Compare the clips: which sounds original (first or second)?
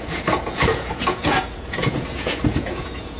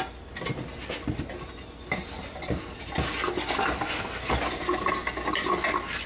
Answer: second